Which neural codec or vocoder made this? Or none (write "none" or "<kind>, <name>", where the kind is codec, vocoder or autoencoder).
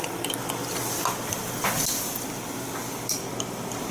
none